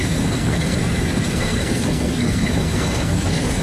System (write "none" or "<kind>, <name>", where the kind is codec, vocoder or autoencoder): codec, SNAC